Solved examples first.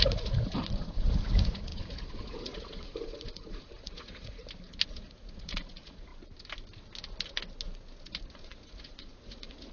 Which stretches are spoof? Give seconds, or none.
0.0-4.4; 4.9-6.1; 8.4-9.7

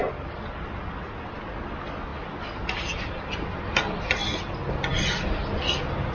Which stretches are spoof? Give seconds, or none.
none

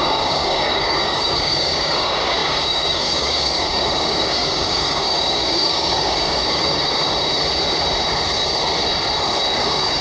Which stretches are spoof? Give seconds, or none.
0.0-7.1; 9.6-10.0

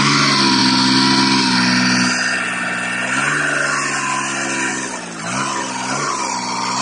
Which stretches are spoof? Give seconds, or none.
none

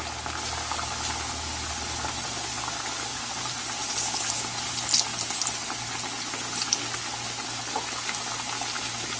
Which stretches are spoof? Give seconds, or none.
3.1-3.6

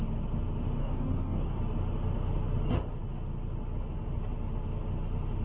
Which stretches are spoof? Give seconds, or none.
0.8-1.6